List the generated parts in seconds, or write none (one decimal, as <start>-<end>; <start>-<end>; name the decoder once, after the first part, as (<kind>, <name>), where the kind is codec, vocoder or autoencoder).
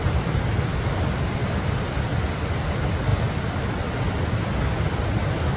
none